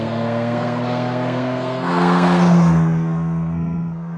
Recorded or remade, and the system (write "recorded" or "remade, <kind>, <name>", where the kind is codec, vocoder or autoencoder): remade, codec, SNAC